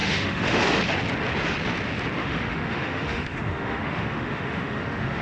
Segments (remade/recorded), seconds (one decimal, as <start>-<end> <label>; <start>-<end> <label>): 0.0-0.6 remade; 0.6-2.2 recorded; 2.2-5.2 remade